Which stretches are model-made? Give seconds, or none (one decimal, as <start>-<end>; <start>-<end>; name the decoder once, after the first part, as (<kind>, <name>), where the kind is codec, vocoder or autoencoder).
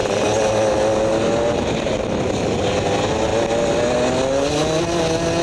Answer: none